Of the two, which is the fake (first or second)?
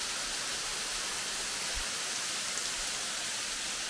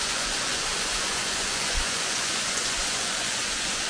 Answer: second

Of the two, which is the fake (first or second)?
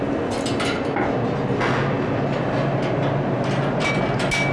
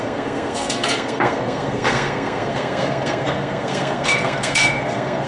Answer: second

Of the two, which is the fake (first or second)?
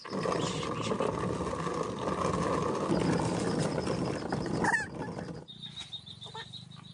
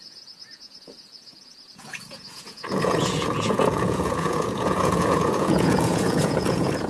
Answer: second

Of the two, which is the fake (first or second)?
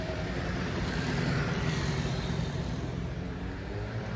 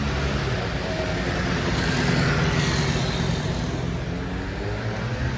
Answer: first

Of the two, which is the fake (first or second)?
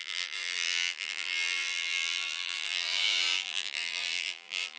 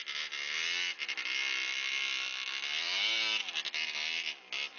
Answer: first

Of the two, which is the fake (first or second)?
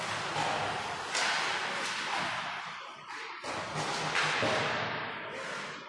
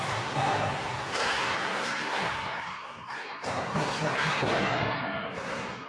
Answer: second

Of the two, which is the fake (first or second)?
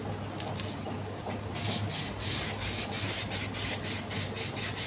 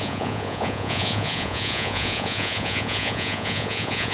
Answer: second